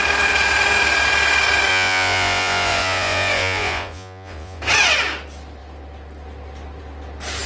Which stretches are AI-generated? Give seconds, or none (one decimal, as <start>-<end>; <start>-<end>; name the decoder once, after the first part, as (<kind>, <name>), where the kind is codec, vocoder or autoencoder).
1.7-4.6 (vocoder, Vocos)